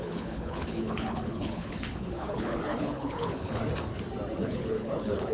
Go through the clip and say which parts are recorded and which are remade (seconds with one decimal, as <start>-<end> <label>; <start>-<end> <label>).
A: 0.0-3.6 remade; 3.6-4.4 recorded; 4.4-5.3 remade